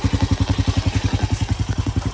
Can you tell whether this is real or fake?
real